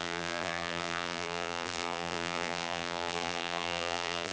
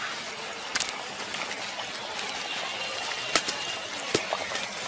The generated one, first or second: first